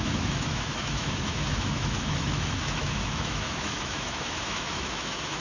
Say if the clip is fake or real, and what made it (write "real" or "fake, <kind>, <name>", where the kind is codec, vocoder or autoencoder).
fake, autoencoder, DAC-VAE